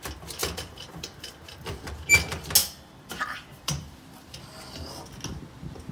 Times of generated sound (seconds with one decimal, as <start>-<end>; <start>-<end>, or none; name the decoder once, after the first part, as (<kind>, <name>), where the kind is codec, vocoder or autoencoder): 0.4-1.9 (vocoder, BigVGAN v2); 2.6-4.4